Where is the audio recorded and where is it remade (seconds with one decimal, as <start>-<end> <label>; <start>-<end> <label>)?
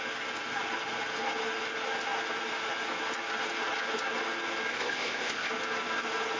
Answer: 0.0-4.7 recorded; 4.7-5.5 remade; 5.5-6.4 recorded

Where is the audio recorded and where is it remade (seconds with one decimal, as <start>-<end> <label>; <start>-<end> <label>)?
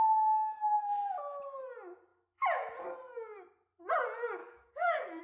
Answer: 0.0-4.4 recorded; 4.4-5.2 remade